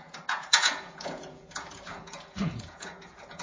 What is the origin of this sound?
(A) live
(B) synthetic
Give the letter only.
B